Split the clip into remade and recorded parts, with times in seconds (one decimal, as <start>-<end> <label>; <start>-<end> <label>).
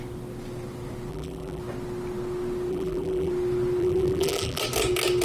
0.0-1.1 recorded; 1.1-1.6 remade; 1.6-2.7 recorded; 2.7-3.3 remade; 3.3-3.8 recorded; 3.8-4.6 remade; 4.6-5.2 recorded